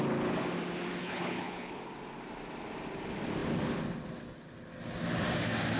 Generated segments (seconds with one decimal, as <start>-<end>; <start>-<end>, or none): 1.0-1.8